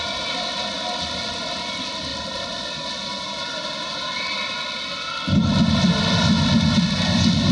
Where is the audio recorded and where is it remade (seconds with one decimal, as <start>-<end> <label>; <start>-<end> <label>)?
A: 0.0-2.1 recorded; 2.1-2.6 remade; 2.6-7.5 recorded

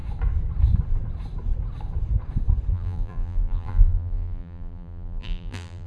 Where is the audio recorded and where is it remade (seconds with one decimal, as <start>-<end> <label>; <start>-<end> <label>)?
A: 0.0-2.7 recorded; 2.7-5.9 remade

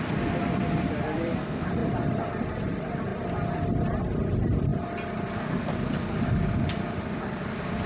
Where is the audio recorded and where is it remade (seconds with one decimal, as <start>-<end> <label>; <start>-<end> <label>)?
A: 0.0-1.8 remade; 1.8-2.4 recorded; 2.4-4.7 remade; 4.7-6.2 recorded; 6.2-7.9 remade